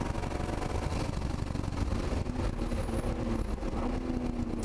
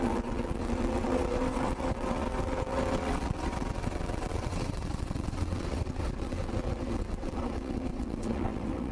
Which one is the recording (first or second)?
first